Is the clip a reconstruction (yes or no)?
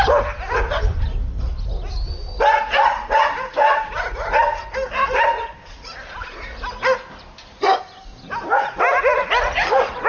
no